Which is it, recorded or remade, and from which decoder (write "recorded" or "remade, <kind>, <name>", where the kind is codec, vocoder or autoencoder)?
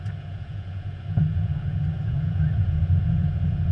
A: remade, vocoder, Vocos